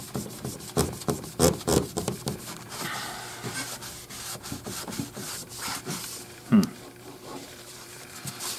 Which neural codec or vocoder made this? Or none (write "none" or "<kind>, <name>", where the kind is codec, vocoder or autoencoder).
vocoder, BigVGAN v2